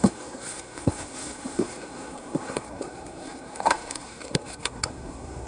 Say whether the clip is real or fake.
fake